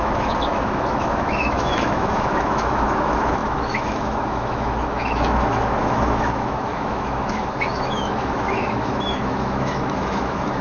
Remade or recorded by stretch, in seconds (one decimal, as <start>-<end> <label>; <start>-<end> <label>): 0.0-10.6 remade